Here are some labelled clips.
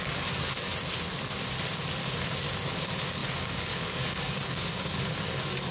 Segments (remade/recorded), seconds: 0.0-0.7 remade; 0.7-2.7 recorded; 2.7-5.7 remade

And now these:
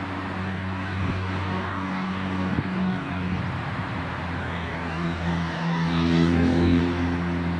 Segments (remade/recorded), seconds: 0.0-0.4 recorded; 0.4-3.4 remade; 3.4-4.4 recorded; 4.4-6.8 remade; 6.8-7.6 recorded

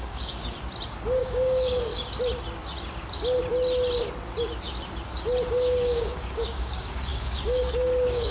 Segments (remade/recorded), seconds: 0.0-0.4 remade; 0.4-1.2 recorded; 1.2-1.9 remade; 1.9-5.5 recorded; 5.5-8.3 remade

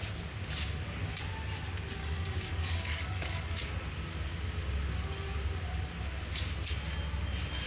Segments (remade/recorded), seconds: 0.0-2.0 recorded; 2.0-3.6 remade; 3.6-7.7 recorded

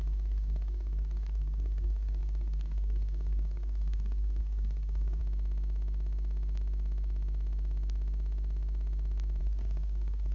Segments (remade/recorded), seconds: 0.0-5.2 remade; 5.2-9.4 recorded; 9.4-10.3 remade

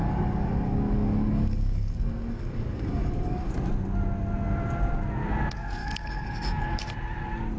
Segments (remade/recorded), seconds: 0.0-3.5 remade; 3.5-5.8 recorded; 5.8-6.8 remade; 6.8-7.6 recorded

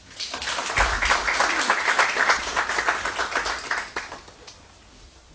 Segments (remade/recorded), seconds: 0.0-5.3 recorded

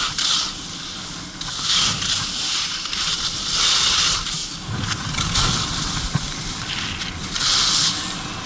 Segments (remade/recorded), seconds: 0.0-4.4 recorded; 4.4-5.5 remade; 5.5-8.5 recorded